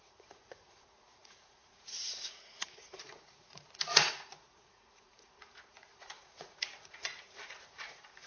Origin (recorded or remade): remade